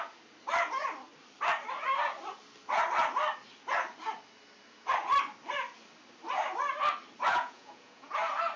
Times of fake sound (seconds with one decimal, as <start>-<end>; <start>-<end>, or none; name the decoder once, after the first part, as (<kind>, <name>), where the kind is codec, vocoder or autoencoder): 7.3-8.1 (vocoder, Vocos)